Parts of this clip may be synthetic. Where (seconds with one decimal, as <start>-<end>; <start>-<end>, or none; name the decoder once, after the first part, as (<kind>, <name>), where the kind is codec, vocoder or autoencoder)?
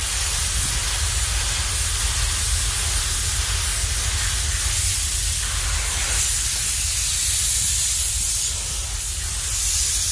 none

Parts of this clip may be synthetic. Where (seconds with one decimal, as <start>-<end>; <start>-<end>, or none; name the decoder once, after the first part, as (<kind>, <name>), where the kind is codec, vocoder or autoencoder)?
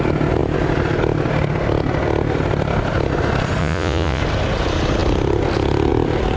3.6-4.2 (vocoder, Vocos)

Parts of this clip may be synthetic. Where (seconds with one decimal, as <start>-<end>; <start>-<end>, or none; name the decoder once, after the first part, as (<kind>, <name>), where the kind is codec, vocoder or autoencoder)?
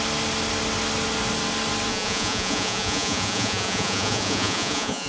1.9-5.1 (vocoder, Vocos)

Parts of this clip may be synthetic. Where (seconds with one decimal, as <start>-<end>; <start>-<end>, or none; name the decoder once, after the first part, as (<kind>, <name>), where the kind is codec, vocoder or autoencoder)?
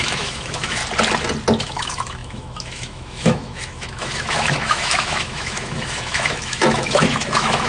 0.0-0.8 (autoencoder, DAC-VAE); 1.6-7.7